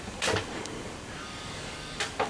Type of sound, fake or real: fake